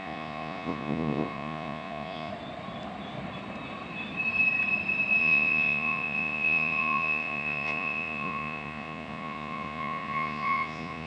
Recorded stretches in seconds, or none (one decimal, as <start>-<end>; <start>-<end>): 2.3-5.2